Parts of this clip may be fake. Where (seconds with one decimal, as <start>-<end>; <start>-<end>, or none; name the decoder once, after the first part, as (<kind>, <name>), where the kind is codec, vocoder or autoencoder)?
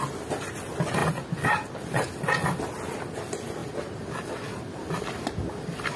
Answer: none